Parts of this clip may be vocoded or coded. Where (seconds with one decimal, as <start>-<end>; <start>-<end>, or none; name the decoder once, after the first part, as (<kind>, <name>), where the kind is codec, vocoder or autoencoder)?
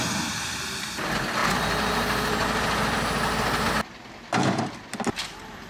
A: none